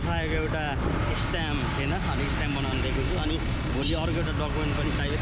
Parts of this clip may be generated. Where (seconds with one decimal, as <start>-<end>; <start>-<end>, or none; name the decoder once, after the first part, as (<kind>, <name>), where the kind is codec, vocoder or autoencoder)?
none